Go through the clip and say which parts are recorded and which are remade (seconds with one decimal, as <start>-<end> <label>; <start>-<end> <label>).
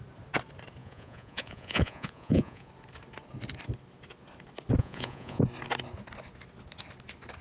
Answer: 0.0-0.8 recorded; 0.8-2.7 remade; 2.7-4.8 recorded; 4.8-5.4 remade; 5.4-7.4 recorded